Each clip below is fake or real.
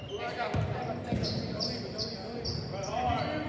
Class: real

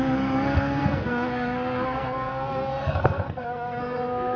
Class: fake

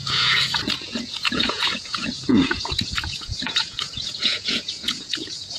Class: fake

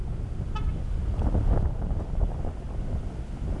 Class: real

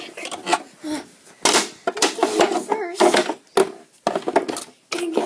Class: real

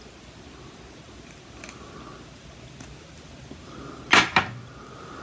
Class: real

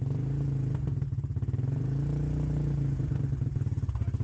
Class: real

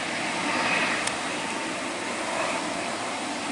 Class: real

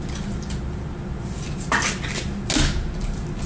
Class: real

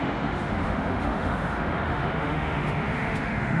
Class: fake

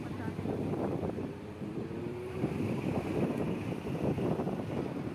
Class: fake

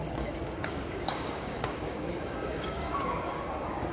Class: fake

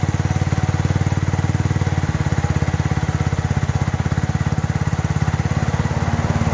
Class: real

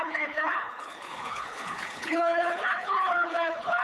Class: fake